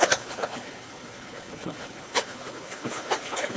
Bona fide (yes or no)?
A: no